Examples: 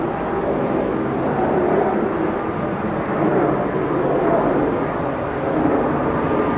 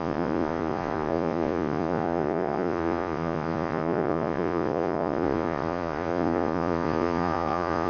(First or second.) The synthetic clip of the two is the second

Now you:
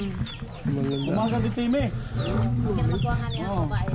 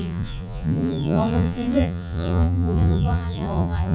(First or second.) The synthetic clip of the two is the second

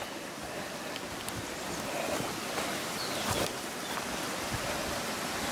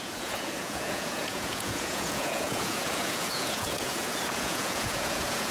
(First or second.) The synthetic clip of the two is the second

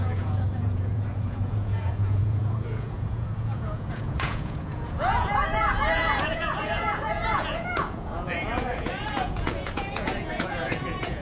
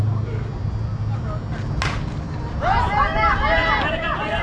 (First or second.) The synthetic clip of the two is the first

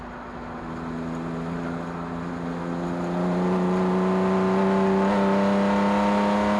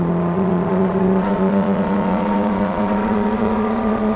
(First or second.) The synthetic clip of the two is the second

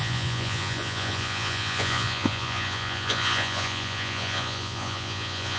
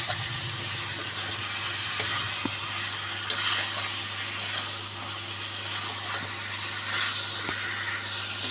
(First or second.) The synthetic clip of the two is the first